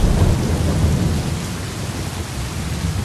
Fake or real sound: real